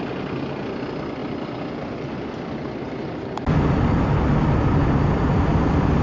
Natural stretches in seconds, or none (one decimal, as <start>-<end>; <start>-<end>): 0.0-1.2; 3.6-6.0